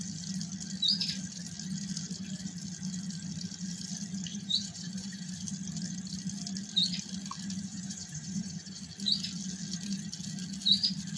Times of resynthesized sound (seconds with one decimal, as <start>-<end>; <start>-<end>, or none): 4.3-5.3; 7.7-8.8